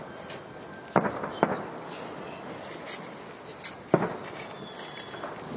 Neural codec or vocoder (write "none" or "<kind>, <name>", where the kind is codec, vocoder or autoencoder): none